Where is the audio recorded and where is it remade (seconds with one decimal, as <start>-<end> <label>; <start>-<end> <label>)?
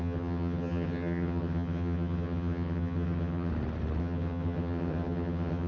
0.0-3.5 remade; 3.5-4.0 recorded; 4.0-5.7 remade